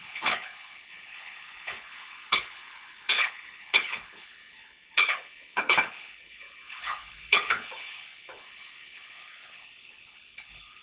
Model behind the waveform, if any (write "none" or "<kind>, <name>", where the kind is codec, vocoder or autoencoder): codec, HILCodec